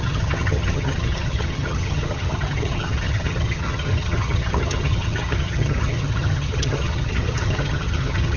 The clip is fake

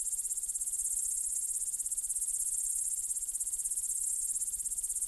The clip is real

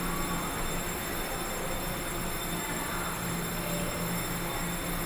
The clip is real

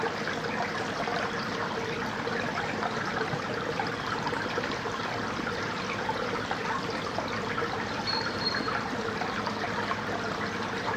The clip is real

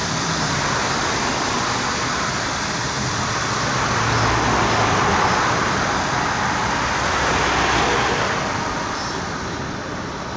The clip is real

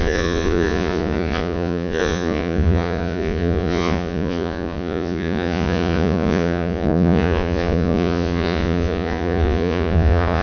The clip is fake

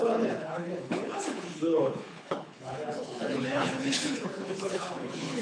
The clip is fake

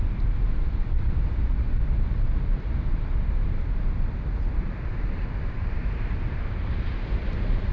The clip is fake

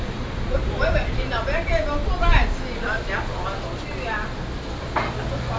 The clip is real